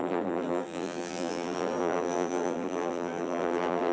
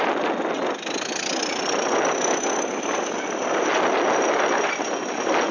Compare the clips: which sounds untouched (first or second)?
second